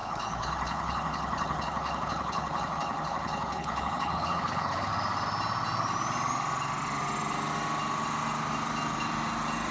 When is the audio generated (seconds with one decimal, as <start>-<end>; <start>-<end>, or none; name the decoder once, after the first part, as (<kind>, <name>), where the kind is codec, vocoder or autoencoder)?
0.0-4.9 (codec, HILCodec)